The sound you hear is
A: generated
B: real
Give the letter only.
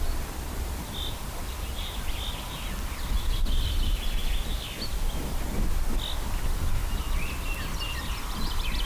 B